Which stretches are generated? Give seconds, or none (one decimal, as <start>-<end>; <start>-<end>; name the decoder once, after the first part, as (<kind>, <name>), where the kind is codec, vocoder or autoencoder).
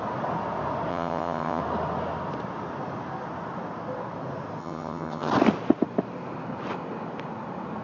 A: 0.9-1.6 (vocoder, HiFi-GAN); 4.6-5.3